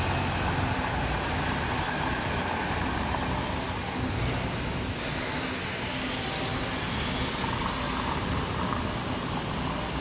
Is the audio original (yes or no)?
yes